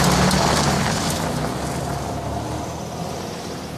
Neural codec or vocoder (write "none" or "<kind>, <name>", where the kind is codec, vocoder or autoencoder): none